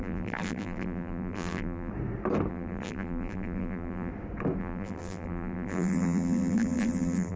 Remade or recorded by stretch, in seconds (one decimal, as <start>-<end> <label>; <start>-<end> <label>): 0.0-1.9 remade; 1.9-2.5 recorded; 2.5-4.1 remade; 4.1-4.6 recorded; 4.6-7.4 remade